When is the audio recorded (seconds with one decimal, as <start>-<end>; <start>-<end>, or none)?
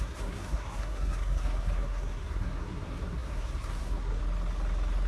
4.2-5.1